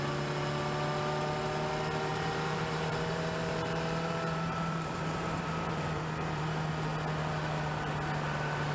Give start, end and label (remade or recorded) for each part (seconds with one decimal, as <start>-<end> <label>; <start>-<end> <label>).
0.0-2.1 recorded; 2.1-6.7 remade; 6.7-8.7 recorded